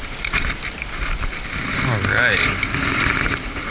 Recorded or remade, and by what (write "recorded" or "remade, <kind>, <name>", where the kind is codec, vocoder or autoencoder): remade, vocoder, BigVGAN v2